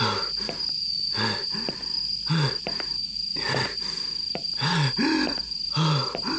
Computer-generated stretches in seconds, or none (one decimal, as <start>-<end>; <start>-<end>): none